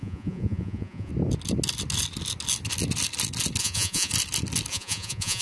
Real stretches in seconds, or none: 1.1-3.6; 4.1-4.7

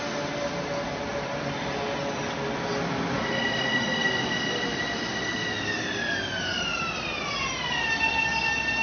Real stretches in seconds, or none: 0.0-8.8

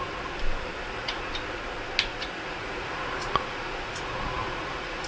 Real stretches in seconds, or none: 0.0-0.8; 1.3-2.1

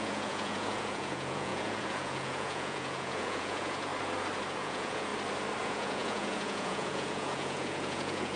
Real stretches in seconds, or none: 3.9-4.5; 5.1-5.6

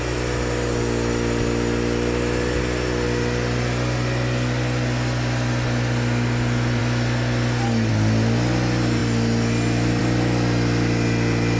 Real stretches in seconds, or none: 0.0-11.6

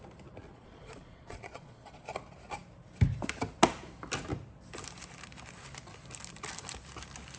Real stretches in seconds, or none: 0.0-0.4; 2.1-7.4

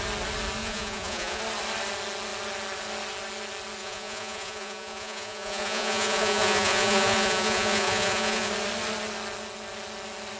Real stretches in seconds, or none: 0.0-0.6; 1.4-3.8; 8.5-10.4

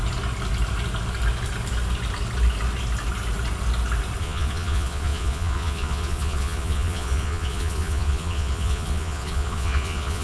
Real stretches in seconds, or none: 0.0-4.2